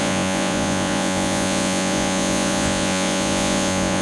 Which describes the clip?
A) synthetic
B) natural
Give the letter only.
A